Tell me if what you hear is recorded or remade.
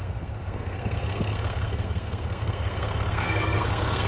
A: remade